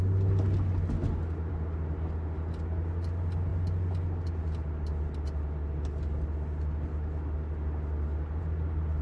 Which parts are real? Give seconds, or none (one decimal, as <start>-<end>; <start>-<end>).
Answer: 0.0-9.0